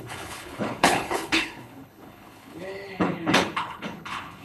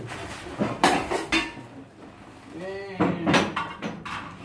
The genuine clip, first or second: second